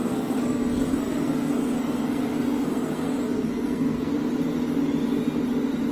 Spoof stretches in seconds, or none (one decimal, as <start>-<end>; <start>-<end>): 0.0-4.1